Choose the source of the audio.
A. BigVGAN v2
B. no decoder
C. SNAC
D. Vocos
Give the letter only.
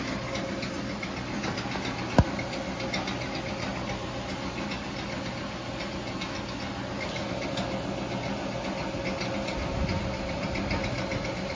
B